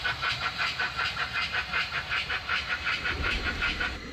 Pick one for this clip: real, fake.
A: fake